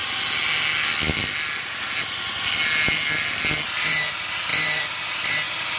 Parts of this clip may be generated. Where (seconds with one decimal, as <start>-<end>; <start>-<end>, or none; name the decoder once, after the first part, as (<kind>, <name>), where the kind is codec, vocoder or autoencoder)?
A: none